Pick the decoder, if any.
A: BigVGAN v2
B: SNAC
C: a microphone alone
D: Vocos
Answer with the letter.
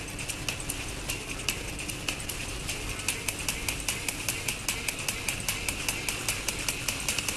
C